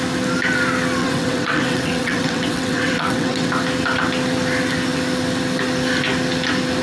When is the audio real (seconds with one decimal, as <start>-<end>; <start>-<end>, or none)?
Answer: 0.0-1.0; 3.5-6.8